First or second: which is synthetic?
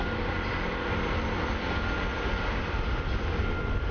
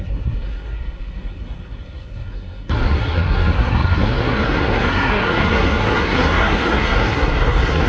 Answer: second